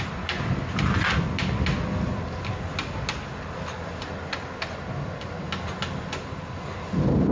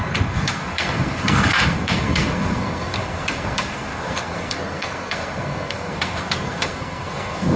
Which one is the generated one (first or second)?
second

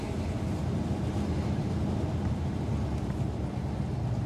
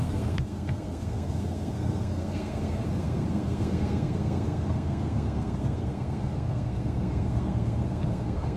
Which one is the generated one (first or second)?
second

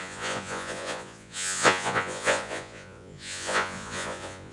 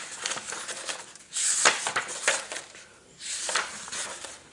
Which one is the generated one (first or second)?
first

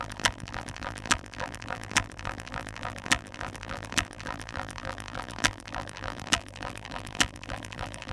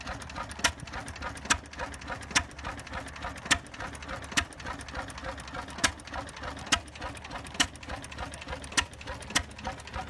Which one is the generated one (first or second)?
first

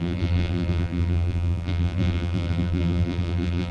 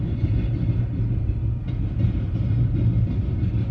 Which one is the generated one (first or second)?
first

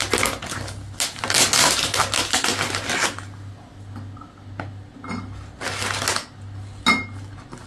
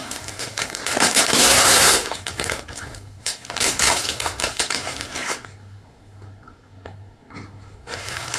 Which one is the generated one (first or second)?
second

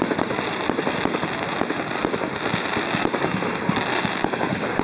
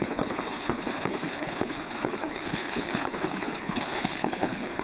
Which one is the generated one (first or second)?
second